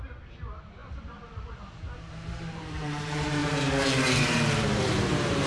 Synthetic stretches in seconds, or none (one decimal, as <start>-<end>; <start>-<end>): 0.0-3.4; 4.1-5.5